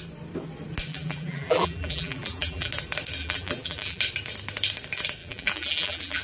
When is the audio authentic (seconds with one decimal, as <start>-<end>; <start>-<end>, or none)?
0.0-0.9; 2.7-3.2; 4.0-5.2